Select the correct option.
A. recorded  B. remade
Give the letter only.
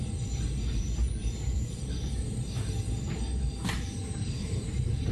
B